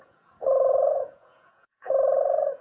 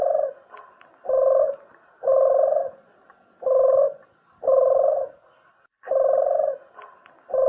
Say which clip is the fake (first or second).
first